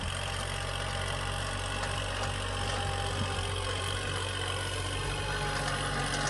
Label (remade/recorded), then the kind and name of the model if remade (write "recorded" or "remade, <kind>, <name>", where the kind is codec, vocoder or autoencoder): recorded